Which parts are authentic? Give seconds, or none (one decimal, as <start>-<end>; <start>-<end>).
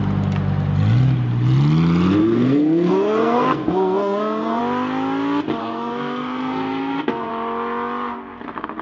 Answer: 0.0-2.2; 4.6-5.6; 7.3-8.8